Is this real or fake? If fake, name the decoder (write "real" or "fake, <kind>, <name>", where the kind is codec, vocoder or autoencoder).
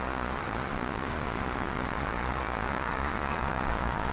fake, vocoder, Vocos